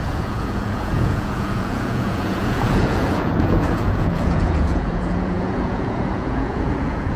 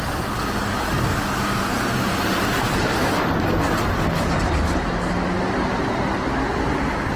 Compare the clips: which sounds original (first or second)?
second